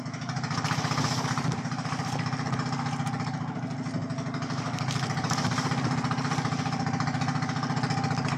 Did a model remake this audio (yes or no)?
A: no